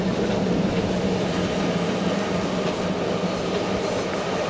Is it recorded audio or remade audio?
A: recorded